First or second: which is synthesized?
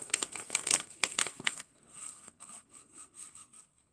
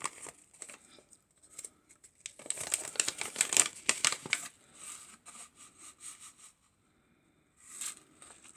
first